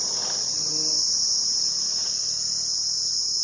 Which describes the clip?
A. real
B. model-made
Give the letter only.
A